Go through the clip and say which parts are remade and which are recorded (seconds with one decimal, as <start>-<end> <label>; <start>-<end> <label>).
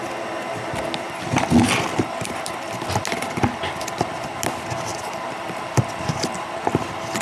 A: 0.0-7.2 recorded